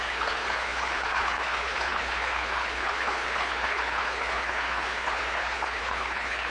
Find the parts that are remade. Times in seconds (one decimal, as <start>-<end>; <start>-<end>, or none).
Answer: 0.0-6.5